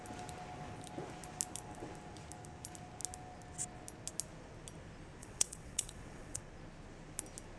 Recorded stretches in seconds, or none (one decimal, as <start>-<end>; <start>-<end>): 0.0-5.2; 6.4-7.6